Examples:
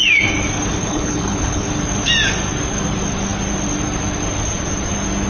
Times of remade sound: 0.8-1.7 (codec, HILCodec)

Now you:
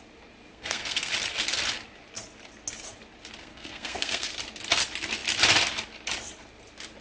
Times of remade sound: 0.5-1.1 (codec, SNAC); 3.4-4.3

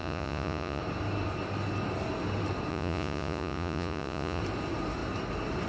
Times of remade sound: 0.0-0.8 (vocoder, Vocos); 2.7-4.4

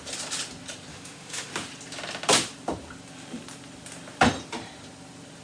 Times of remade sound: 0.9-1.5 (autoencoder, DAC-VAE)

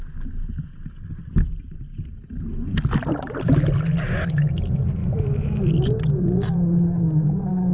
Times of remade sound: 5.0-5.6 (autoencoder, DAC-VAE)